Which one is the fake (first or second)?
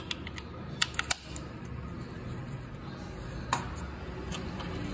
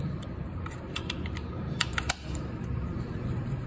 second